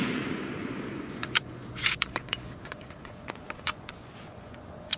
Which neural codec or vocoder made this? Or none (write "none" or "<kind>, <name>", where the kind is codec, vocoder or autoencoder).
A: vocoder, Vocos